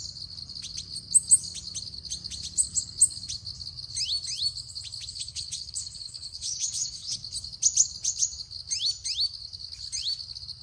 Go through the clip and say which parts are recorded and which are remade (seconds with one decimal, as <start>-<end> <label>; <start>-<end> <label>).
0.0-5.1 recorded; 5.1-7.2 remade; 7.2-10.6 recorded